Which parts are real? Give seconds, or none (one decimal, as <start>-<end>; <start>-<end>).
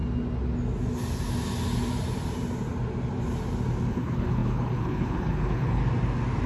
0.0-3.9; 5.8-6.5